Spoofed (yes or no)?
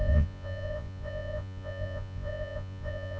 yes